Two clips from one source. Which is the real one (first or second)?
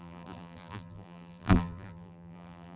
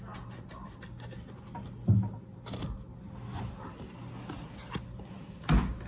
second